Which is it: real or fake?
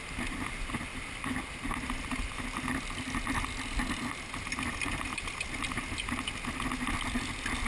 real